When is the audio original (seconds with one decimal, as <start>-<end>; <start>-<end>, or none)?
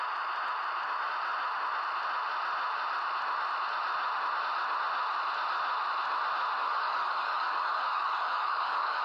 0.0-6.6